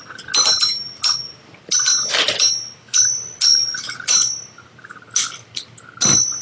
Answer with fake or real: real